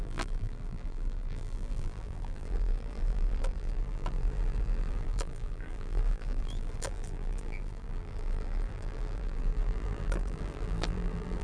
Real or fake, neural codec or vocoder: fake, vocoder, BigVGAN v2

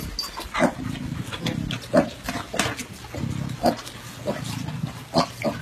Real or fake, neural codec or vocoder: real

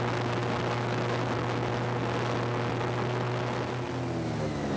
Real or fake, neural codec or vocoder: real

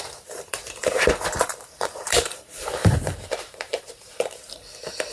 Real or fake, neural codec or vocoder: fake, vocoder, BigVGAN v2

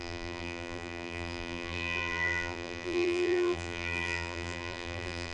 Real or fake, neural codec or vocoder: fake, vocoder, BigVGAN v2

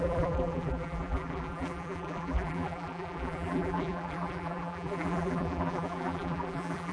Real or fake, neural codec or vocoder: fake, vocoder, BigVGAN v2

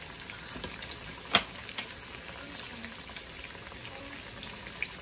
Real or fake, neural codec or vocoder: real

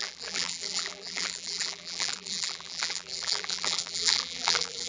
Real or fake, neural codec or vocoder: fake, vocoder, BigVGAN v2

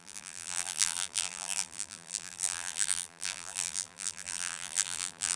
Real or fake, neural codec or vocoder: fake, vocoder, BigVGAN v2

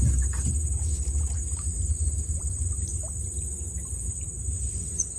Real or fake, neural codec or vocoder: fake, vocoder, BigVGAN v2